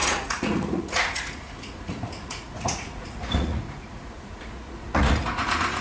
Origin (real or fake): fake